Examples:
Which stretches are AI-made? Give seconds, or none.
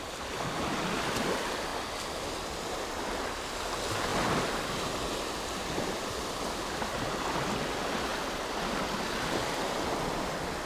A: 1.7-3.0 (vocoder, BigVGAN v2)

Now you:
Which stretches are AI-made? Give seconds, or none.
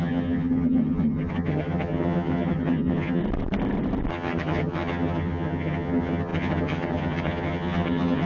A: 0.0-3.2 (vocoder, HiFi-GAN); 4.1-8.3